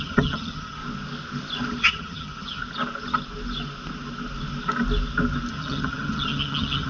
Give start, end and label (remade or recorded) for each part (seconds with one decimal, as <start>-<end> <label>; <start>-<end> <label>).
0.0-0.8 remade; 0.8-1.8 recorded; 1.8-2.6 remade; 2.6-5.5 recorded; 5.5-6.9 remade